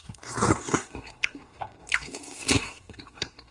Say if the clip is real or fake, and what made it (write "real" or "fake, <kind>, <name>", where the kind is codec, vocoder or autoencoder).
fake, codec, SNAC